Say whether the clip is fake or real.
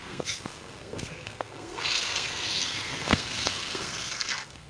fake